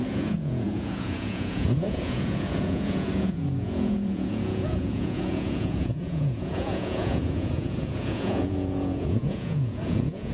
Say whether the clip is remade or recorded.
remade